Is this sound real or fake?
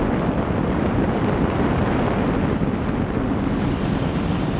real